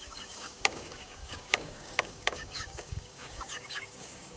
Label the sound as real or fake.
fake